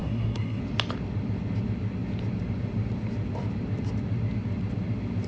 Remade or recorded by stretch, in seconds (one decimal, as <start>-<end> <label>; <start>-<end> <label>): 0.0-0.6 remade; 0.6-5.3 recorded